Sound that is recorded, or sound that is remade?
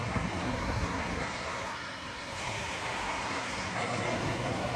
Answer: remade